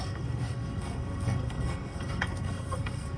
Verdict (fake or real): fake